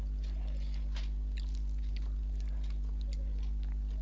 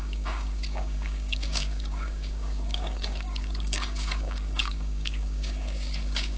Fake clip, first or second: second